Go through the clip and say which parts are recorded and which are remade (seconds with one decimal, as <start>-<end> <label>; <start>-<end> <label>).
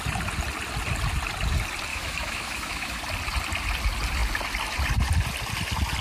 0.0-1.9 recorded; 1.9-3.0 remade; 3.0-6.0 recorded